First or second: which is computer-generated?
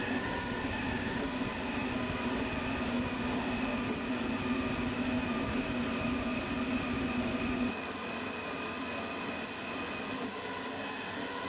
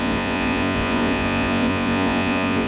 second